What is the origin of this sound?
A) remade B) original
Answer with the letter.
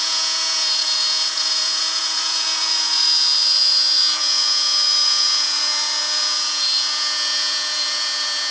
A